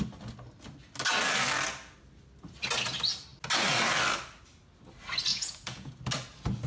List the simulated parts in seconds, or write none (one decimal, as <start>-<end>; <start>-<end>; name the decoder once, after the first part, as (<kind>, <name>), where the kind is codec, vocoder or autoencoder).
5.3-6.0 (vocoder, Vocos)